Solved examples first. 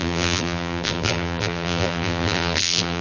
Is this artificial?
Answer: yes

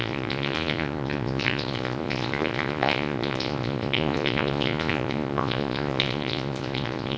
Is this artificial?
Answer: yes